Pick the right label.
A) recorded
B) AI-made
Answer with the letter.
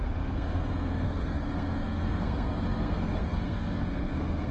B